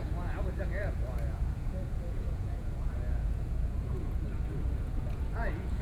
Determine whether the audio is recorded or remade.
remade